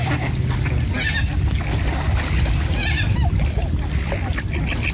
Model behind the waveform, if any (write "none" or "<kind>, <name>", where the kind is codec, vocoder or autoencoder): none